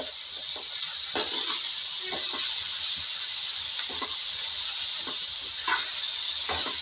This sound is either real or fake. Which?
real